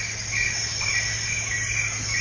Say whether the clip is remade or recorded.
recorded